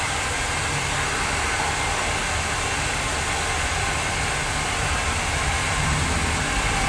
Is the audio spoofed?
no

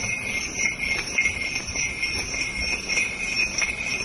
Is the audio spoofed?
no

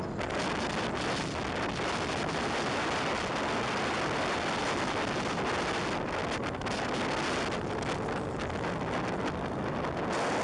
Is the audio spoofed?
no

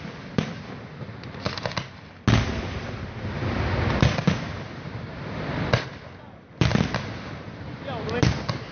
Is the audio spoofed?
no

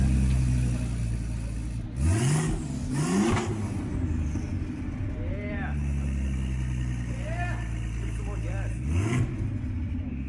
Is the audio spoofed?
no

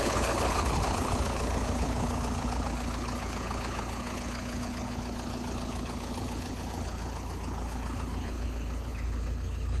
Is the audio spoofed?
yes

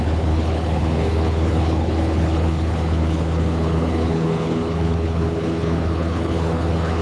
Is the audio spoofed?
yes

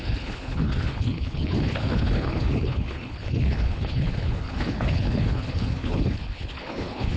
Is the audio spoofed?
yes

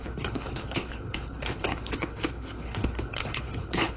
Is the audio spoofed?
yes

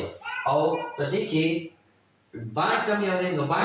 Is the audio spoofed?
no